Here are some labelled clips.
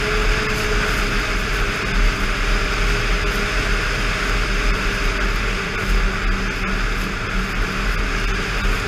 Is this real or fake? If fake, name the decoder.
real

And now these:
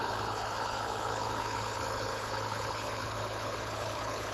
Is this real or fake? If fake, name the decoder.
fake, codec, HILCodec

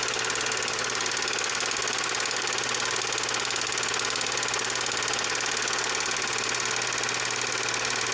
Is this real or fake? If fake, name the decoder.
real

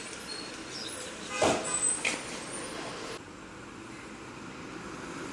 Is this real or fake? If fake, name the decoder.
real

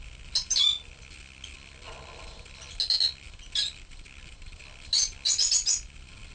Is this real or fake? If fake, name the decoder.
real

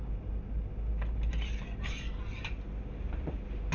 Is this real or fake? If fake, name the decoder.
real